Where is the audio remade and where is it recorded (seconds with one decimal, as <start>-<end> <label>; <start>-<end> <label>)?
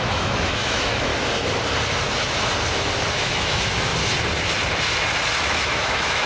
0.0-1.1 remade; 1.1-3.1 recorded; 3.1-3.9 remade; 3.9-5.4 recorded; 5.4-6.3 remade